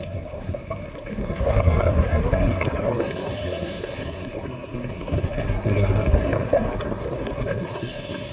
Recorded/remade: remade